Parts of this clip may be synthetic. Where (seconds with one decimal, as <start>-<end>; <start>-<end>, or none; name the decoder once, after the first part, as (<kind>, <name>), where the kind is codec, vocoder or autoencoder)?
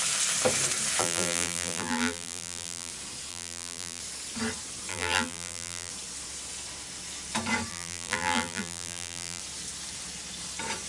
1.0-2.9 (vocoder, BigVGAN v2); 3.3-4.0; 4.9-5.9; 7.7-9.4